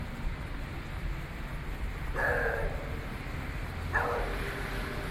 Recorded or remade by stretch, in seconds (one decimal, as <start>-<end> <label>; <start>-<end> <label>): 0.0-5.1 recorded